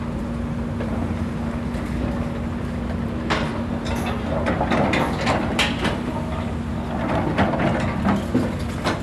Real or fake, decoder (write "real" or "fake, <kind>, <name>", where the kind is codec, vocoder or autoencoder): real